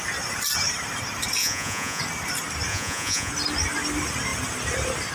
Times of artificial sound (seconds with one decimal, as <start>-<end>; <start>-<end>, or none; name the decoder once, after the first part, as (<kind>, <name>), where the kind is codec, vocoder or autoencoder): 1.4-2.0 (vocoder, Vocos); 2.7-3.3